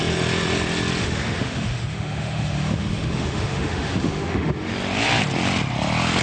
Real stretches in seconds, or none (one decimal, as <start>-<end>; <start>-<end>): 0.0-1.0; 4.7-6.2